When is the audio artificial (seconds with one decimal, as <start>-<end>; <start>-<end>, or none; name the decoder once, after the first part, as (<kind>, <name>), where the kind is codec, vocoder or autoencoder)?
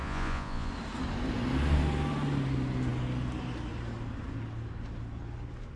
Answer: 0.0-0.7 (vocoder, Vocos)